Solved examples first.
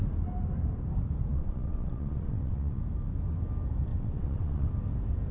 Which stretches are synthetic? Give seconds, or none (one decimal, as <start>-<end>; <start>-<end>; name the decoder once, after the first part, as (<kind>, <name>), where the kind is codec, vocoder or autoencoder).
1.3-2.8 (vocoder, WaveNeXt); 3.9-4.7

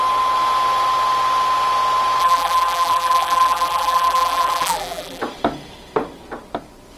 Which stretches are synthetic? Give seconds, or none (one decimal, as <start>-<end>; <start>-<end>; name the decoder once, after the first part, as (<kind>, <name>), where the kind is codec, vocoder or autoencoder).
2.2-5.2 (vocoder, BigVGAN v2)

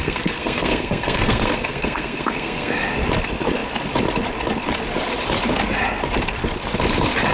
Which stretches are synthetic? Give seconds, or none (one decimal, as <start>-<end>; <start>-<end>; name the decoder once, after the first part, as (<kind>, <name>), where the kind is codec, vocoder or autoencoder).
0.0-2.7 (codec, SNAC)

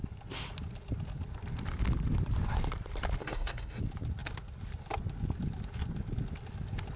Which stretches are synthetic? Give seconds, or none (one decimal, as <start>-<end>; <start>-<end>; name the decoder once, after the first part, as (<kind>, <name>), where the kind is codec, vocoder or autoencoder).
3.2-3.8 (codec, SNAC)

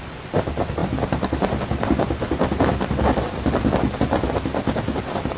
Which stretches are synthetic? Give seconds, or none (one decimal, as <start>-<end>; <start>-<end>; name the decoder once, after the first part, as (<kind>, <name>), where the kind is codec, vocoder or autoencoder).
none